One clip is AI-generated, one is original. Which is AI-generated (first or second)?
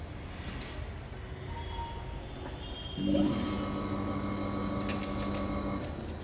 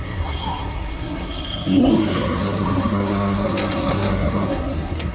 second